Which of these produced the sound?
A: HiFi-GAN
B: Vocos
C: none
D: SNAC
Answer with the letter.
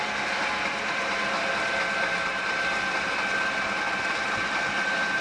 C